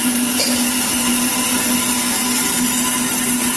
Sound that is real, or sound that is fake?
real